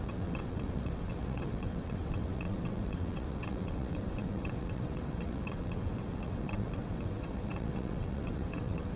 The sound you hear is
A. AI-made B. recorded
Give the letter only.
A